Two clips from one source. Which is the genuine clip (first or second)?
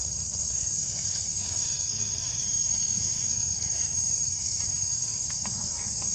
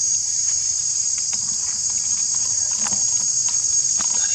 second